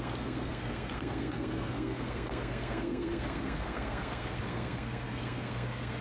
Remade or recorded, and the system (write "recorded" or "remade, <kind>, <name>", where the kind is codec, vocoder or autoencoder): remade, codec, SNAC